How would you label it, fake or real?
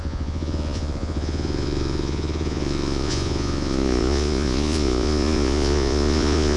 fake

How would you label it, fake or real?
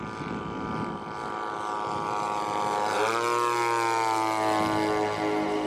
real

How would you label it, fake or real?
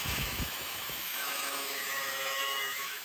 fake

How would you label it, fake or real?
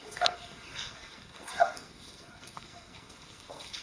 fake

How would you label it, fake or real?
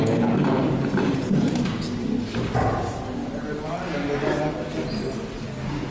real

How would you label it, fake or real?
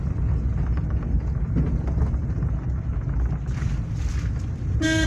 real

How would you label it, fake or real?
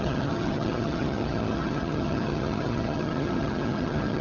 fake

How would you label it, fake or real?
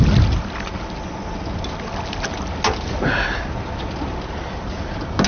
real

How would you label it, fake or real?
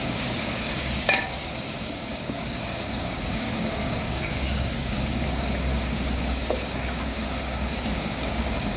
fake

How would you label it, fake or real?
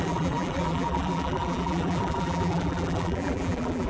fake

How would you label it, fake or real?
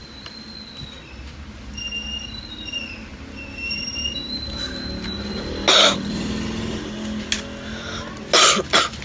real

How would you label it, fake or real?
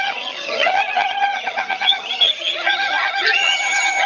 fake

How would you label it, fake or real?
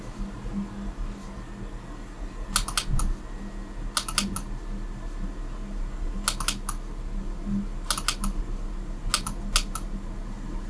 real